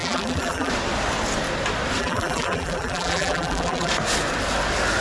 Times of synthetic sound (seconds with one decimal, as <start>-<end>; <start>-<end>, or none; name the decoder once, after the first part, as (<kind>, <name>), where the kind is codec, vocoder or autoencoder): 0.0-0.7 (vocoder, BigVGAN v2); 2.0-3.9

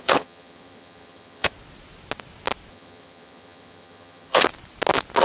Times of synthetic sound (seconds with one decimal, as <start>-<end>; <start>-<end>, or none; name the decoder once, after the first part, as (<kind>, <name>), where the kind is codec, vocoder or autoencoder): 0.0-1.5 (vocoder, HiFi-GAN); 2.7-4.4

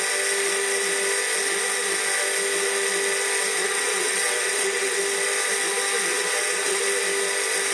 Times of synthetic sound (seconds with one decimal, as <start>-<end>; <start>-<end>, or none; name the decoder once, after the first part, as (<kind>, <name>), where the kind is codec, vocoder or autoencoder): 3.6-5.0 (vocoder, WaveNeXt); 6.1-6.8